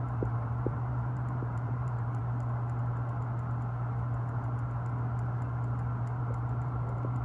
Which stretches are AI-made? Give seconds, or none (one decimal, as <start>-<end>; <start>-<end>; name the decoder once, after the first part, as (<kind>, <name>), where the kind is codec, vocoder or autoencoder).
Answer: 0.0-2.2 (vocoder, BigVGAN v2); 6.2-7.2